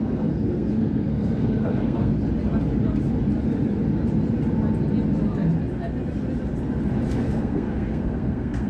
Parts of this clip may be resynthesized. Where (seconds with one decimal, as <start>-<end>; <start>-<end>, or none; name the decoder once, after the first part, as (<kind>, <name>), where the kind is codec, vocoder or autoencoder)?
0.0-2.1 (codec, SNAC); 7.1-8.7